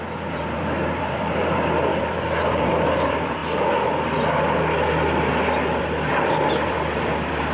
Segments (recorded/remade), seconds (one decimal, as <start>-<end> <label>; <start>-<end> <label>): 0.0-3.4 remade; 3.4-5.8 recorded; 5.8-7.5 remade

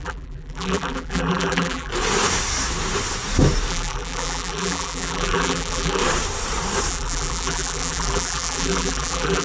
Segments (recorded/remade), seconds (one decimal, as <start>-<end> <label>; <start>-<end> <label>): 0.0-1.9 remade; 1.9-3.7 recorded; 3.7-6.0 remade; 6.0-6.9 recorded; 6.9-9.4 remade